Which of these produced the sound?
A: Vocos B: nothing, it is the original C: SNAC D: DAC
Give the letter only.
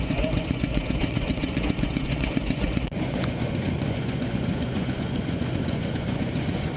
A